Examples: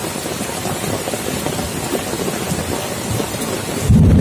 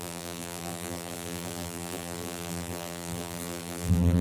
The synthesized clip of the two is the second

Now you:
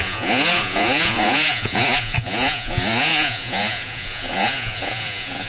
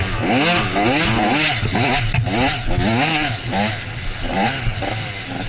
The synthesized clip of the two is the first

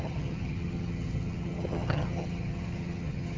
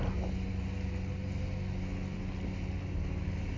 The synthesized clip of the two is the first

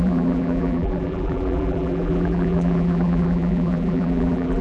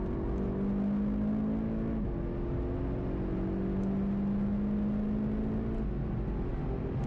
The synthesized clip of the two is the first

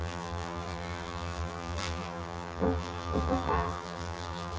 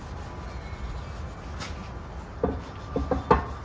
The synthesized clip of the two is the first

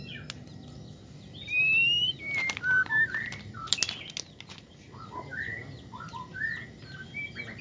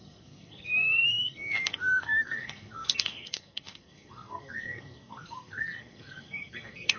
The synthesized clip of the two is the second